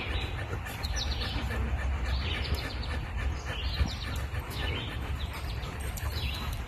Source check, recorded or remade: remade